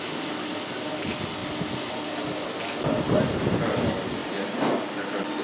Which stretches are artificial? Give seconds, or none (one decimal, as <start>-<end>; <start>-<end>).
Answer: none